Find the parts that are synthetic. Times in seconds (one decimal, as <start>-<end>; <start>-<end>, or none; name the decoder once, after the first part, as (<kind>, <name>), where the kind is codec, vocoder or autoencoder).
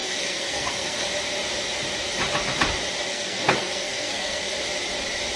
0.0-1.1 (codec, SNAC); 3.1-4.6